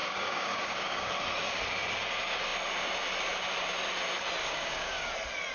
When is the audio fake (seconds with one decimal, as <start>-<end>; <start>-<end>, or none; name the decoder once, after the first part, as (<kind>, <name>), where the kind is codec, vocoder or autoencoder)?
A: 0.0-1.1 (codec, DAC); 4.4-5.1